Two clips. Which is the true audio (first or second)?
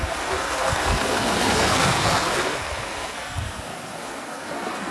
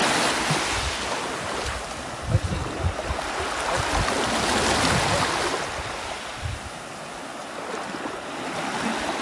second